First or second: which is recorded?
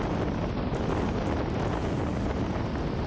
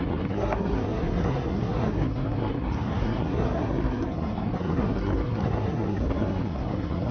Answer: first